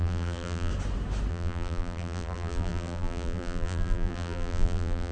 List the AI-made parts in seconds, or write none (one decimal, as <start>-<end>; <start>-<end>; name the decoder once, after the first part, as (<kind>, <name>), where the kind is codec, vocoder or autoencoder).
0.0-0.7 (vocoder, BigVGAN v2); 1.3-5.1